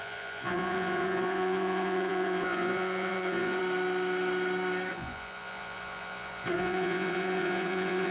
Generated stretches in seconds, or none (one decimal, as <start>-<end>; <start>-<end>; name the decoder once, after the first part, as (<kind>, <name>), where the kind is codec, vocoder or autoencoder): 0.0-3.6 (vocoder, Vocos); 4.9-8.1